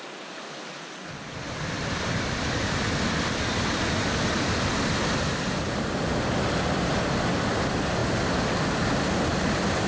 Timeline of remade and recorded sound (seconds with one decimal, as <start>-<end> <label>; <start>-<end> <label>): 0.0-9.9 recorded